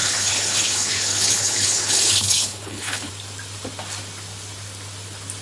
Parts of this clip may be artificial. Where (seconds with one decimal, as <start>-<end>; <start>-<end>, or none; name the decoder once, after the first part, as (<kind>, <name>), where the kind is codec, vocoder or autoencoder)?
0.0-3.1 (codec, HILCodec)